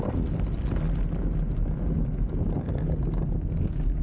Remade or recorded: recorded